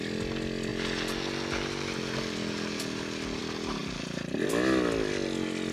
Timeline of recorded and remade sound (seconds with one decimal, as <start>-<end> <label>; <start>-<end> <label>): 0.0-5.7 recorded